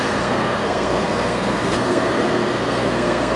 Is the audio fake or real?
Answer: fake